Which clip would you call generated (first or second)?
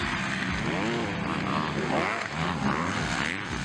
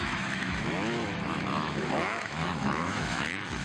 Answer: second